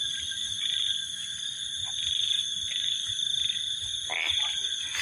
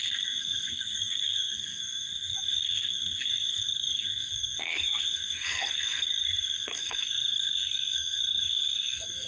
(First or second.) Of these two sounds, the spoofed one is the second